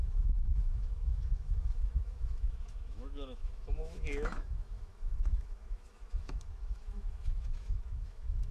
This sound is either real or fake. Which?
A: fake